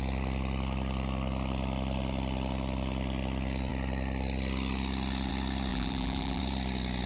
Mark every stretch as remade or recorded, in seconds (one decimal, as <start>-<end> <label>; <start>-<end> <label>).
0.0-5.7 recorded; 5.7-6.4 remade; 6.4-7.1 recorded